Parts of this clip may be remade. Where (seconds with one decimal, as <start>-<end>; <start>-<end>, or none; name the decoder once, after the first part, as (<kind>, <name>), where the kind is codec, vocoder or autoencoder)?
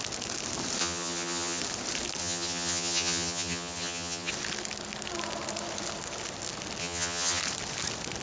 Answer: 0.8-1.6 (vocoder, HiFi-GAN); 2.2-4.3; 6.8-7.4